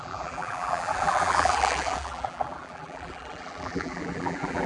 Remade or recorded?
remade